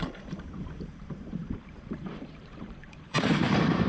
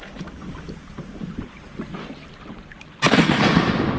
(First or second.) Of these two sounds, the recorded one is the second